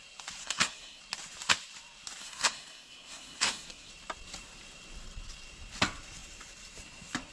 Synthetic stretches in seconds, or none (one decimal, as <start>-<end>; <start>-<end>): 0.4-1.0; 2.2-3.9